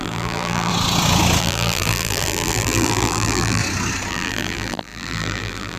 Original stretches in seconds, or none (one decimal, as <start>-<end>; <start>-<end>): 0.7-1.4; 3.6-4.1